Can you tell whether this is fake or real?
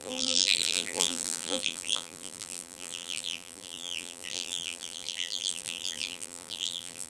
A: fake